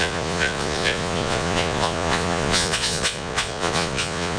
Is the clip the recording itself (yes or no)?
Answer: no